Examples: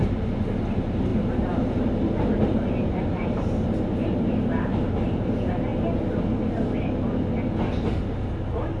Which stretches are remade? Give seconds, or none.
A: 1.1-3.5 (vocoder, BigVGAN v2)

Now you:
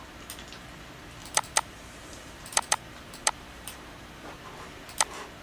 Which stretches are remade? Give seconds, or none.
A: 1.2-4.4 (vocoder, BigVGAN v2)

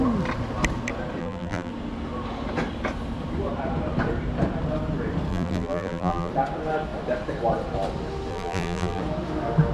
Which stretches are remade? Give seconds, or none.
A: 1.2-1.7 (vocoder, BigVGAN v2); 5.3-6.3; 8.3-9.0